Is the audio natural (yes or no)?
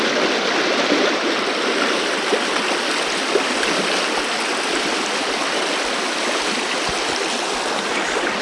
yes